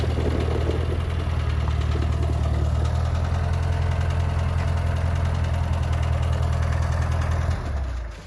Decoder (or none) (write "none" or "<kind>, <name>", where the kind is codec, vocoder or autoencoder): none